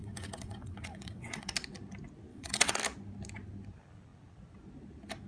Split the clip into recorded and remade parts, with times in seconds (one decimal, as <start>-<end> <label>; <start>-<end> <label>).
0.0-1.5 remade; 1.5-2.3 recorded; 2.3-2.8 remade; 2.8-5.3 recorded